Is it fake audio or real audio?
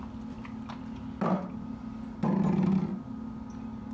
real